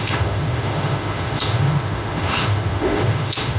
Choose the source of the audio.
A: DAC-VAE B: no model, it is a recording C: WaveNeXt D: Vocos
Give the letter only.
A